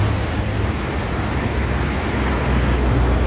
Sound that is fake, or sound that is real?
real